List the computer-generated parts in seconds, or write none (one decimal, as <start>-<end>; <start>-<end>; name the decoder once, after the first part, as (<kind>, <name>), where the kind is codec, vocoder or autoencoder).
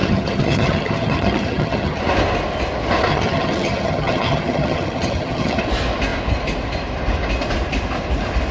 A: 0.0-2.0 (vocoder, HiFi-GAN); 3.1-5.6